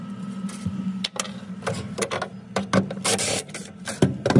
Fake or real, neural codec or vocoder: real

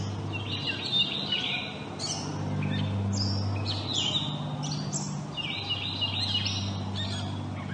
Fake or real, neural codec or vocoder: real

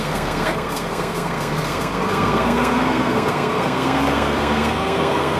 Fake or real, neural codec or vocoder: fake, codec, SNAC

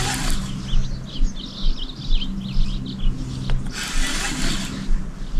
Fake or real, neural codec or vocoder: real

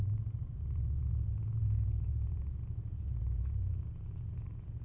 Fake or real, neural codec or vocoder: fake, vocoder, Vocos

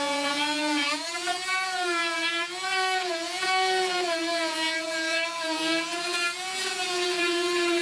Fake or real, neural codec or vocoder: fake, vocoder, Vocos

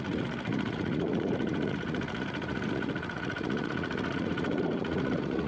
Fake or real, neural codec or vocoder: fake, vocoder, Vocos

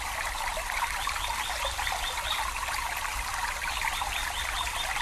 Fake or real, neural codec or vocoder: real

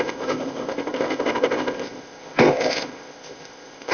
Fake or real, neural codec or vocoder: fake, codec, ZipCodec